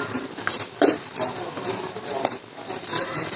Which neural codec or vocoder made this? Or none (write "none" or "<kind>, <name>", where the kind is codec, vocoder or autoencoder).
vocoder, BigVGAN v2